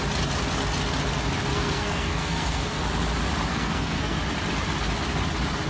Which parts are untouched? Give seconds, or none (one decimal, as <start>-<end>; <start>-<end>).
0.0-1.5; 2.8-3.5; 4.2-5.7